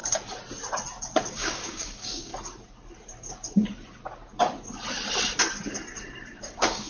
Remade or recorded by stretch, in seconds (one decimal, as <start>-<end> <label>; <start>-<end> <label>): 0.0-1.3 recorded; 1.3-2.3 remade; 2.3-6.4 recorded; 6.4-6.9 remade